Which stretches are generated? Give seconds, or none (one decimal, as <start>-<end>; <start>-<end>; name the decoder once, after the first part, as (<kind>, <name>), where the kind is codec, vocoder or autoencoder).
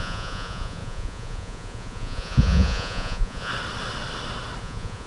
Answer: 0.0-3.5 (vocoder, Vocos); 4.6-5.1